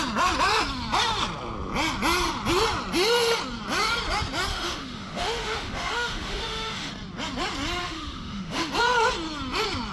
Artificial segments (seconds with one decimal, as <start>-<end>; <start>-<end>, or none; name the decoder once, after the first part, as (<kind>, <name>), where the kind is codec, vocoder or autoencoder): 4.5-6.9 (autoencoder, DAC-VAE); 7.8-8.7